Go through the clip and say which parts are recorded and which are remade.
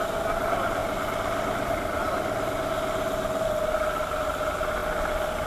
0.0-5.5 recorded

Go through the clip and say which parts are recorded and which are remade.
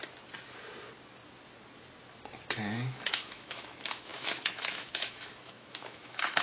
0.0-3.1 recorded; 3.1-6.4 remade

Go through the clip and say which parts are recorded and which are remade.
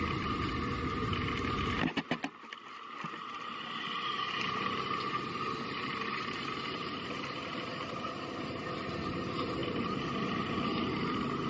0.0-11.5 recorded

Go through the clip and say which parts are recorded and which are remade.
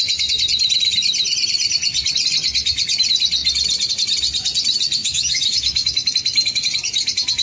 0.0-5.0 recorded; 5.0-6.1 remade; 6.1-7.4 recorded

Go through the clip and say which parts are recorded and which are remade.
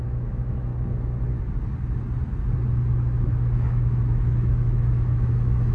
0.0-0.7 remade; 0.7-2.9 recorded; 2.9-5.7 remade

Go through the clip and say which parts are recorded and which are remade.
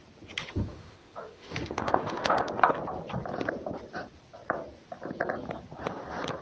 0.0-0.4 recorded; 0.4-2.5 remade; 2.5-6.4 recorded